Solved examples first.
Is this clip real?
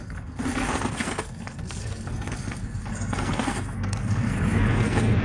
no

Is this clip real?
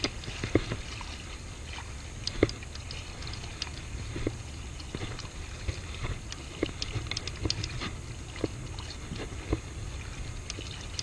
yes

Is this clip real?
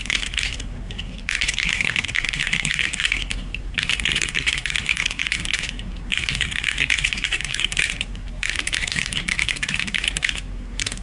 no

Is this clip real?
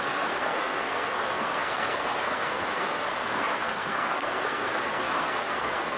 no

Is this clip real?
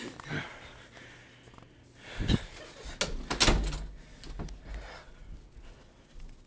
yes